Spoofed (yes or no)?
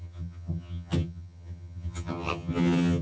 yes